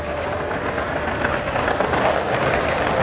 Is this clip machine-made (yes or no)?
no